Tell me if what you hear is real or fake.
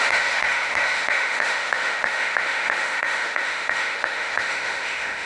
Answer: fake